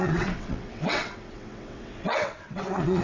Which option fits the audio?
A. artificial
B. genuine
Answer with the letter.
A